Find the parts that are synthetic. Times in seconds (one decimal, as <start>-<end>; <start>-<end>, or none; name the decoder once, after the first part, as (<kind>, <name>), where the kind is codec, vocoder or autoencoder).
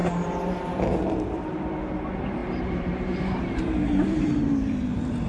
0.0-1.8 (vocoder, BigVGAN v2); 2.4-5.3